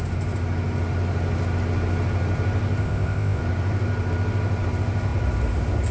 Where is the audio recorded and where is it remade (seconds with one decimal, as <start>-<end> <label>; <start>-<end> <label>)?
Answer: 0.0-2.8 recorded; 2.8-3.4 remade; 3.4-5.9 recorded